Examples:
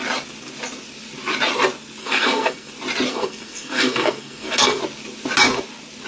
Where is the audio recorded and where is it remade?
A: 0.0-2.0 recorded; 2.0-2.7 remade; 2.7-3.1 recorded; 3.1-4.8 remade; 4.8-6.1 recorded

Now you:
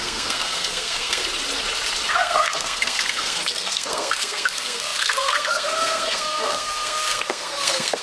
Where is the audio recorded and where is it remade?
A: 0.0-1.2 remade; 1.2-2.1 recorded; 2.1-8.0 remade

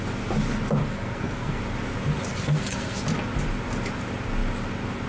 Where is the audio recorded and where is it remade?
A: 0.0-0.8 recorded; 0.8-1.6 remade; 1.6-2.3 recorded; 2.3-3.0 remade; 3.0-5.1 recorded

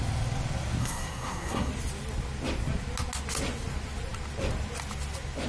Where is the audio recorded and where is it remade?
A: 0.0-0.8 recorded; 0.8-1.7 remade; 1.7-5.5 recorded

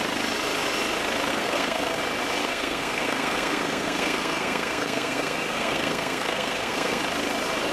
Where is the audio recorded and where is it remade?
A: 0.0-1.3 recorded; 1.3-2.0 remade; 2.0-2.4 recorded; 2.4-7.0 remade; 7.0-7.7 recorded

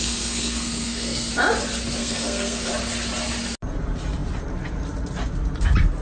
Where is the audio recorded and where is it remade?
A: 0.0-1.3 remade; 1.3-2.0 recorded; 2.0-2.7 remade; 2.7-6.0 recorded

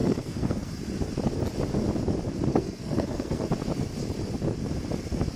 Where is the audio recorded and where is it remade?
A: 0.0-0.7 remade; 0.7-2.5 recorded; 2.5-3.5 remade; 3.5-5.4 recorded

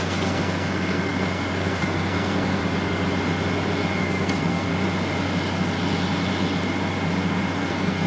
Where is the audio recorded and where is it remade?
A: 0.0-2.6 remade; 2.6-4.0 recorded; 4.0-4.7 remade; 4.7-7.6 recorded; 7.6-8.1 remade